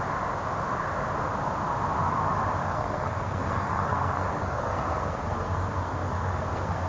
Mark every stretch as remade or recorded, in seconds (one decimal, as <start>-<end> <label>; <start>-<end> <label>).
0.0-2.6 recorded; 2.6-6.9 remade